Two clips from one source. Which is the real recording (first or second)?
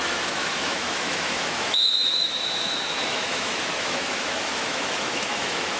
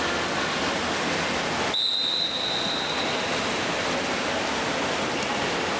second